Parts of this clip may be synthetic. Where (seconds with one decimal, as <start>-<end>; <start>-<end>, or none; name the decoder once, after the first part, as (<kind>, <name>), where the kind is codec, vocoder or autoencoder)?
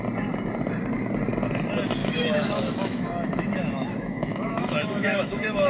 2.0-5.7 (autoencoder, DAC-VAE)